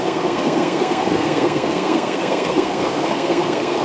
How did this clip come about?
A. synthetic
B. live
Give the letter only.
A